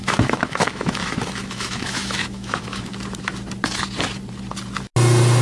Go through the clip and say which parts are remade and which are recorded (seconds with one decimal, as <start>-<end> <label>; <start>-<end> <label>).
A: 0.0-2.9 remade; 2.9-5.4 recorded